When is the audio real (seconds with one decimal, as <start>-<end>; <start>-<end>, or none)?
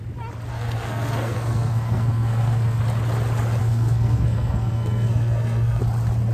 0.0-0.5; 2.8-3.6; 5.8-6.3